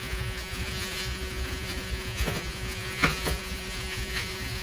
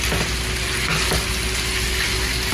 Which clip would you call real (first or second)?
second